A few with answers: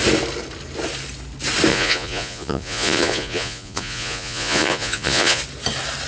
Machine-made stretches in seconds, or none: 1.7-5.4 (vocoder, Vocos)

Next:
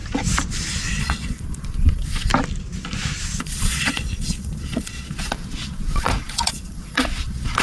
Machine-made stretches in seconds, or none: 1.0-2.3 (vocoder, Vocos); 3.4-7.6

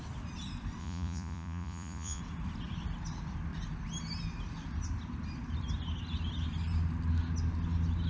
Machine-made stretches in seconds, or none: 0.8-2.2 (vocoder, Vocos)

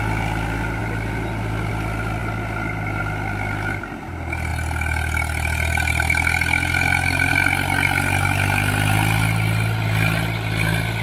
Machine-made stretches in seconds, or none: none

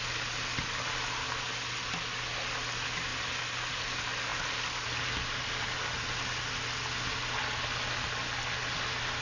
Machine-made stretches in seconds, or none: none

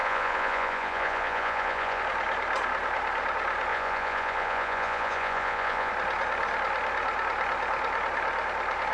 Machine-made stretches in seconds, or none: 0.0-2.0 (vocoder, Vocos); 3.7-5.9